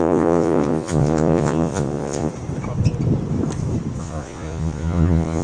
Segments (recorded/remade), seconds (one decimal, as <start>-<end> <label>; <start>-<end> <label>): 0.0-2.3 remade; 2.3-4.0 recorded; 4.0-5.4 remade